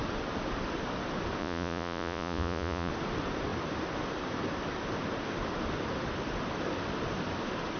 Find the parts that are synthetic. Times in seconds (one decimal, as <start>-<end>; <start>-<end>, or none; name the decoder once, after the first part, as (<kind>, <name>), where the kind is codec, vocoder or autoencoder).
1.4-2.9 (vocoder, Vocos)